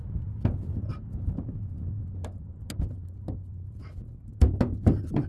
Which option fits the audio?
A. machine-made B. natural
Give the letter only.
B